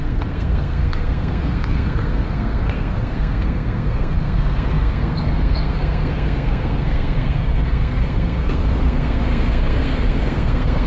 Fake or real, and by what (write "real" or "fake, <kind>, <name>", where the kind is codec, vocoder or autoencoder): fake, codec, SNAC